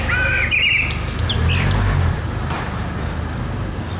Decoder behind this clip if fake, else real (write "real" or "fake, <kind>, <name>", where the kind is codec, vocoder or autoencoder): real